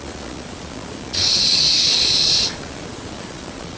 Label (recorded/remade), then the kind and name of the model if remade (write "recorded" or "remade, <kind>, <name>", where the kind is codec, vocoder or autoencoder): remade, vocoder, Vocos